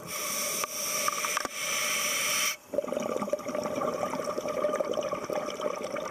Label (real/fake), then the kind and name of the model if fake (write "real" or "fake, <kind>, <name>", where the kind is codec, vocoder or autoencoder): real